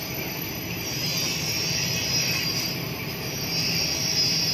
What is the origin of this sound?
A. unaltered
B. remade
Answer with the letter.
A